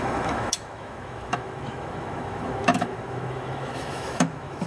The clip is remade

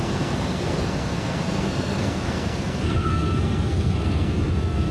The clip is remade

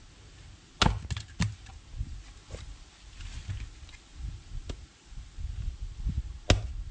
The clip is recorded